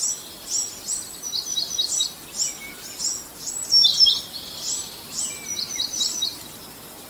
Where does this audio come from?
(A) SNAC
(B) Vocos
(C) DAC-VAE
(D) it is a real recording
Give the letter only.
D